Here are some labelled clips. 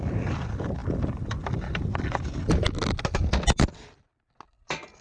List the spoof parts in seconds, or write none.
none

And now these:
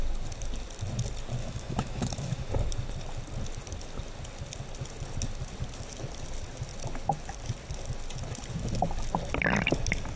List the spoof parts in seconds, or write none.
1.4-2.5 (autoencoder, DAC-VAE)

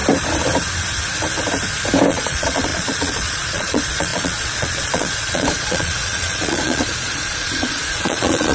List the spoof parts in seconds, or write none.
2.1-8.5 (vocoder, Vocos)

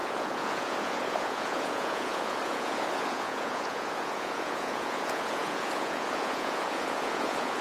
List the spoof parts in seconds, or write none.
0.0-7.6 (vocoder, Vocos)

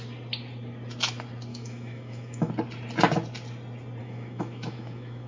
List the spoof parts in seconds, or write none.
1.5-2.5 (autoencoder, DAC-VAE); 4.0-5.3

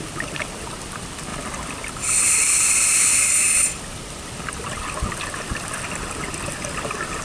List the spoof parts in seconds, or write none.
none

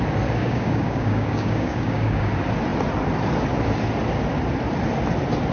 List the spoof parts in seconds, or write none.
0.4-2.3 (codec, DAC)